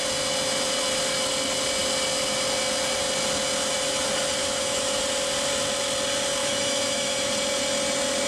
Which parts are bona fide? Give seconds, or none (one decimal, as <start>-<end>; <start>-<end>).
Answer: 0.0-4.4; 5.0-6.4; 7.3-8.3